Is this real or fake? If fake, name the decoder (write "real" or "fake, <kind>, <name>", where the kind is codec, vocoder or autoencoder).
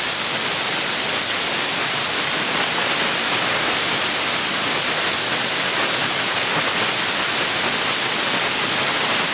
real